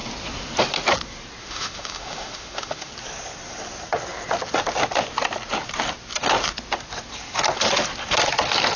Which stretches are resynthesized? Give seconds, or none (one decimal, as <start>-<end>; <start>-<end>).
1.4-2.9